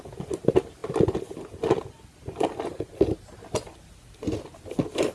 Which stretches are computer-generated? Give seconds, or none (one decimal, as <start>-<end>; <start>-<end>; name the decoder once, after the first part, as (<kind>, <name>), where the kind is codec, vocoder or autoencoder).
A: none